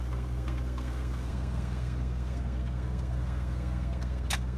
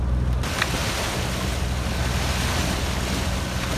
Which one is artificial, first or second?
first